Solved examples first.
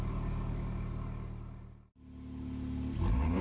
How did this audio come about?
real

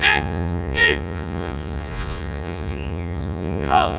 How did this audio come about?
fake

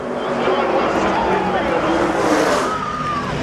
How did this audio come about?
real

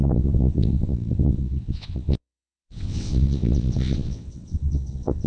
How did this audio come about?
fake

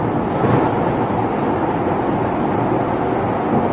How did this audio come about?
real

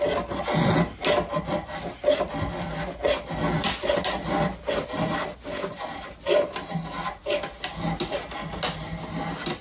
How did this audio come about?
real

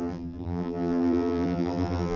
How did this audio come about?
fake